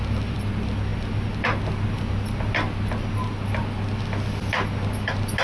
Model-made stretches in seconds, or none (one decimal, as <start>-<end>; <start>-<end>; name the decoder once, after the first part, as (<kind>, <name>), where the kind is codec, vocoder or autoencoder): none